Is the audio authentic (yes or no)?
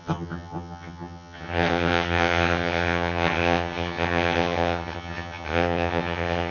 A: no